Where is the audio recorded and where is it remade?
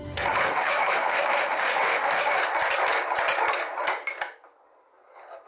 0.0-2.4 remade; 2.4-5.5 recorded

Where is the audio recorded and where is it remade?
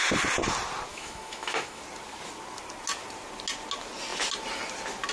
0.0-0.9 recorded; 0.9-1.8 remade; 1.8-5.1 recorded